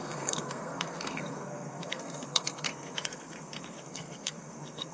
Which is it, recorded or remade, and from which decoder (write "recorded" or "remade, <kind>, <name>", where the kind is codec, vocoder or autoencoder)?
remade, codec, SNAC